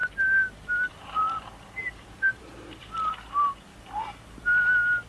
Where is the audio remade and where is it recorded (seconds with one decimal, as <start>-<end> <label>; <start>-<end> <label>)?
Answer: 0.0-3.1 remade; 3.1-5.1 recorded